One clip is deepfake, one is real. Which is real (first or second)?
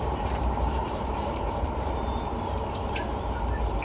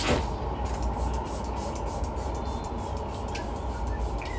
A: second